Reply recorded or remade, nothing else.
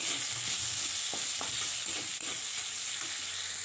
recorded